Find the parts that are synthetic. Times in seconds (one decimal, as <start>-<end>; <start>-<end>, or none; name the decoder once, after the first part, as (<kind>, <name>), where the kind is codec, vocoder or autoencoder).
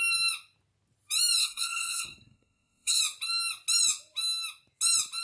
1.4-3.0 (codec, SNAC)